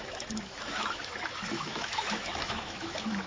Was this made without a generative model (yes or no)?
no